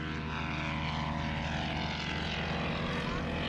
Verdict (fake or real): real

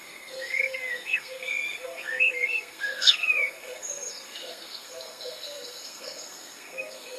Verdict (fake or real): fake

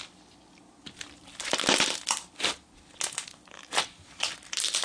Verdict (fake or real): real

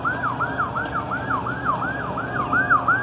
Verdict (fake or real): real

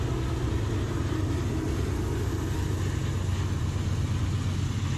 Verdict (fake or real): real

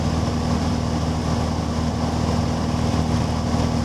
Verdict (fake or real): real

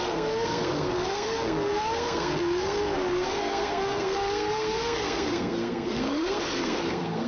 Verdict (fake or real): fake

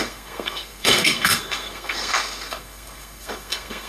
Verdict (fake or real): fake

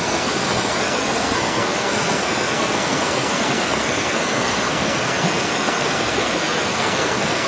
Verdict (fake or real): fake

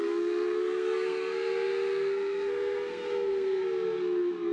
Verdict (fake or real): fake